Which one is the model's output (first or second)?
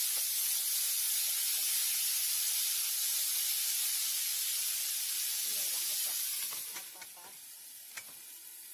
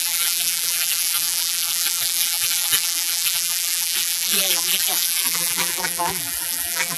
second